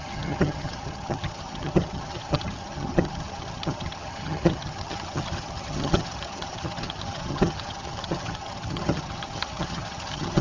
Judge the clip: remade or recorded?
remade